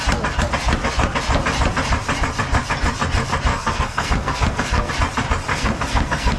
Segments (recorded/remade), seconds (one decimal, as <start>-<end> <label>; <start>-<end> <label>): 0.0-3.5 recorded; 3.5-4.9 remade; 4.9-5.5 recorded; 5.5-6.4 remade